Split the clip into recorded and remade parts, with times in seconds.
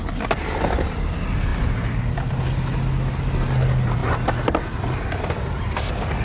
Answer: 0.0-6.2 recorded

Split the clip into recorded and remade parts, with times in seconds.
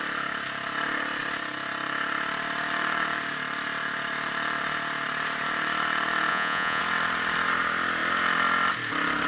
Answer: 0.0-6.3 recorded; 6.3-6.8 remade; 6.8-9.3 recorded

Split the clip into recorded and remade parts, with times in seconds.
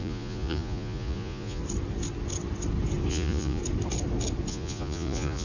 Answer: 0.0-1.6 remade; 1.6-3.1 recorded; 3.1-3.6 remade; 3.6-4.5 recorded; 4.5-5.4 remade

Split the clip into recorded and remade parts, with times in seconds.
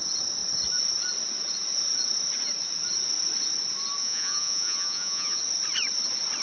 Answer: 0.0-4.0 recorded; 4.0-5.4 remade; 5.4-6.4 recorded